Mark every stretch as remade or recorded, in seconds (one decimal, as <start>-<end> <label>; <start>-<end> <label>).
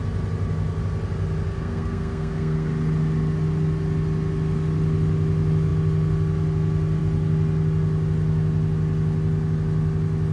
0.0-1.6 recorded; 1.6-2.7 remade; 2.7-10.3 recorded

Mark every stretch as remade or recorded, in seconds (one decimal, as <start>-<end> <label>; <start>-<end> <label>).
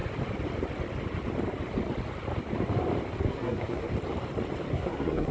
0.0-3.2 recorded; 3.2-3.9 remade; 3.9-4.7 recorded; 4.7-5.3 remade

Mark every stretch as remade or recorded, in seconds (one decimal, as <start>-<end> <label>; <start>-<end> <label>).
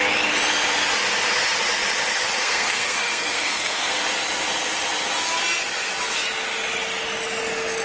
0.0-2.4 recorded; 2.4-4.0 remade; 4.0-7.8 recorded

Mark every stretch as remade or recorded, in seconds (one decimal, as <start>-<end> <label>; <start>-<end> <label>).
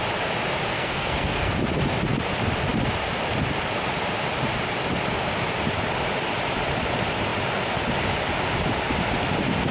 0.0-0.7 recorded; 0.7-1.5 remade; 1.5-9.7 recorded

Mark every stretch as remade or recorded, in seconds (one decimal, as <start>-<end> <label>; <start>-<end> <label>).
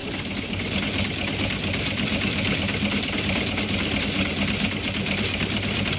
0.0-6.0 recorded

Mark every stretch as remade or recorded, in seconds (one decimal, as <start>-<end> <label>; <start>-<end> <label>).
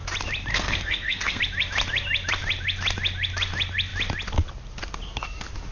0.0-0.5 recorded; 0.5-1.4 remade; 1.4-5.7 recorded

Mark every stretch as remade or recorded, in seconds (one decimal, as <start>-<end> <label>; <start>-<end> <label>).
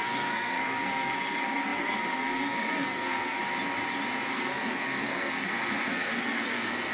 0.0-3.4 remade; 3.4-4.3 recorded; 4.3-6.9 remade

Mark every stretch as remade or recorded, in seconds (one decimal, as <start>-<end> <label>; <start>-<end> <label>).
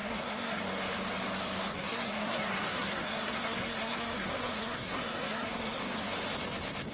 0.0-0.6 remade; 0.6-1.7 recorded; 1.7-5.8 remade; 5.8-6.9 recorded